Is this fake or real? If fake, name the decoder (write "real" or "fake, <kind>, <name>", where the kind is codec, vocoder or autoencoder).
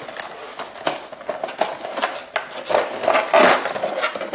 real